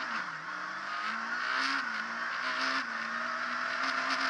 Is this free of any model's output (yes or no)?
yes